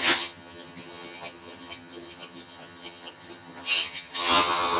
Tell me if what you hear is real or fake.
fake